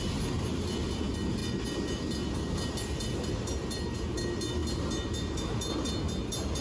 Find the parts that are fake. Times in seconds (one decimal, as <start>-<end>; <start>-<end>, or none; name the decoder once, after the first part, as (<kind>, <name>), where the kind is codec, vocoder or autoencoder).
none